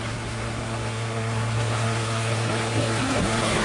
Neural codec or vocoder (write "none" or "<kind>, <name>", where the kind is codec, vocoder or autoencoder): codec, SNAC